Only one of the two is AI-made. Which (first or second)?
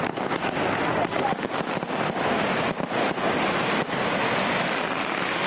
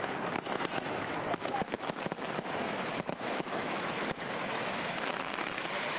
second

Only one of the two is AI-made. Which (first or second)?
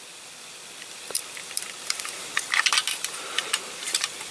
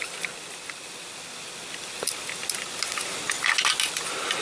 first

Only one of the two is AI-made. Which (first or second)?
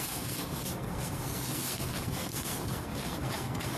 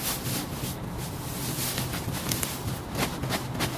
first